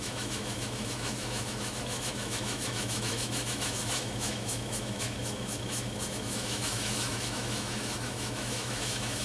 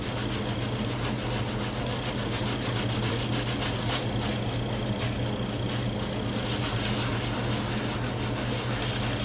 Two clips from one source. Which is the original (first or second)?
second